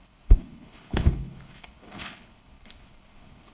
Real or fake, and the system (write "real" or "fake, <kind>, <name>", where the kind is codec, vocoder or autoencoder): fake, codec, HILCodec